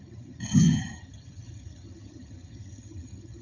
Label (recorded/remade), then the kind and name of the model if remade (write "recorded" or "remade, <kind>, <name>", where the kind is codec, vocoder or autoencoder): remade, vocoder, HiFi-GAN